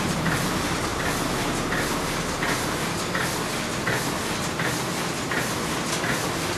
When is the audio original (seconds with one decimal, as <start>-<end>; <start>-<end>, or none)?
0.0-6.6

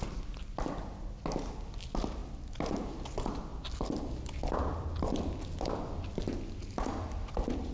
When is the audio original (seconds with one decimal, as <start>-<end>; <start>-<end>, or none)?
0.0-2.2; 2.8-3.5; 5.3-7.7

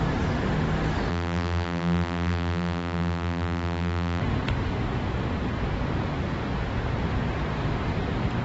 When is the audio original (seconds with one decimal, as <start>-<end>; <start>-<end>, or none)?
0.0-1.1; 4.2-8.4

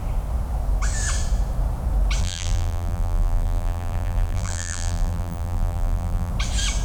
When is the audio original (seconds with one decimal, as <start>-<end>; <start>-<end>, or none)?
0.0-2.2; 6.3-6.8

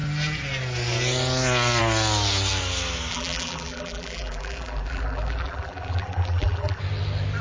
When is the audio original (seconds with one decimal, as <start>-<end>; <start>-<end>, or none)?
0.0-3.1; 6.8-7.4

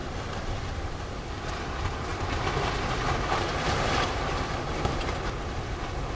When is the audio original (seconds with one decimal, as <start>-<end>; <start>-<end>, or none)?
1.5-6.1

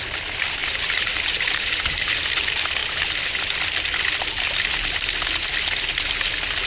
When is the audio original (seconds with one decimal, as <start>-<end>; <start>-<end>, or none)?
0.0-0.6; 2.2-6.7